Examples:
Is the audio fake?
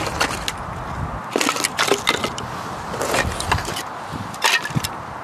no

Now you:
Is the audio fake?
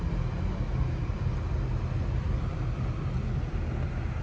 no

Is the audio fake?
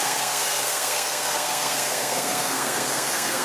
yes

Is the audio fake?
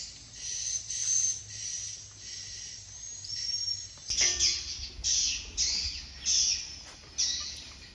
no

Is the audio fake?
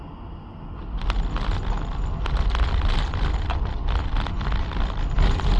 no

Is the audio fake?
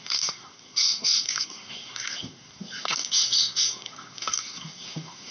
yes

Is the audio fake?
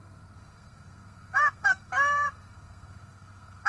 yes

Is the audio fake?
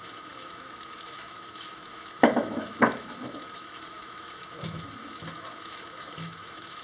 yes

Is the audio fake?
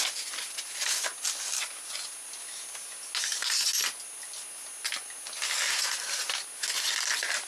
no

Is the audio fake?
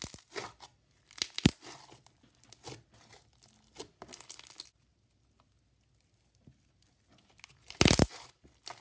no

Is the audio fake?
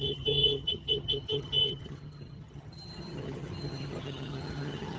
yes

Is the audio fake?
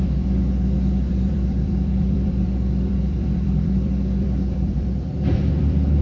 yes